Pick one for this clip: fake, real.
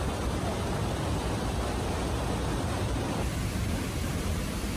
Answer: real